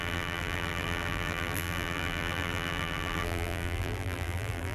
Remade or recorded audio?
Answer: remade